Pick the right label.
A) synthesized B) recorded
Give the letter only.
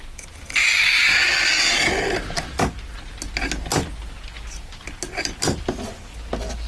B